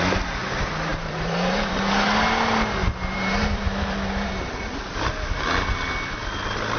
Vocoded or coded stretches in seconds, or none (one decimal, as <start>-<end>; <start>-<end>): 0.9-1.8; 2.8-4.3